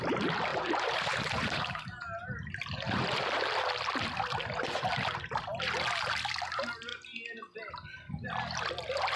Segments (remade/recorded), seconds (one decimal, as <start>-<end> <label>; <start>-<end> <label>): 0.0-0.5 recorded; 0.5-3.6 remade; 3.6-9.2 recorded